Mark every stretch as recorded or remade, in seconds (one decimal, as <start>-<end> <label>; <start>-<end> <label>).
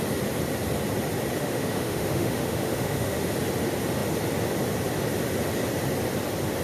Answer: 0.0-1.4 recorded; 1.4-3.2 remade; 3.2-6.6 recorded